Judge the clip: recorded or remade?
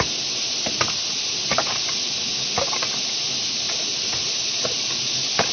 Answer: recorded